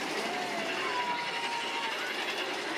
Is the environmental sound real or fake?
real